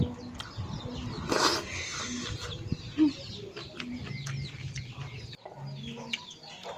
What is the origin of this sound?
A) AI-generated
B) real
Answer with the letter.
B